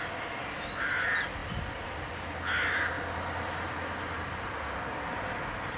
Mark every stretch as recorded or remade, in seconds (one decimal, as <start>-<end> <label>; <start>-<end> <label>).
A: 0.0-5.8 recorded